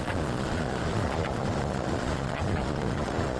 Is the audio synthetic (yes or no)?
yes